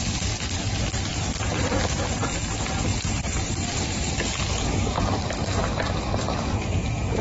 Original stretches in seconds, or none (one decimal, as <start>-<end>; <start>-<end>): 0.0-1.1; 2.0-2.9; 4.1-7.2